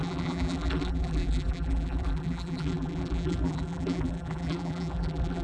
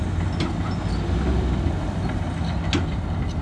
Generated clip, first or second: first